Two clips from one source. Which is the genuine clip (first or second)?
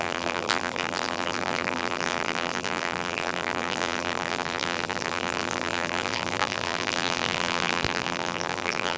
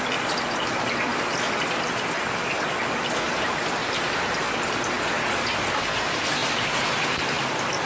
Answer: second